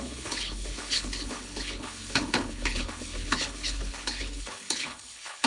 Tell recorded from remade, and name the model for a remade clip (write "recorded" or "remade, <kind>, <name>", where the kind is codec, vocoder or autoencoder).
remade, codec, HILCodec